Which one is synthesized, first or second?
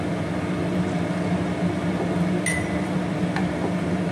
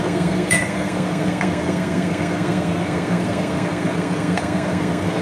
second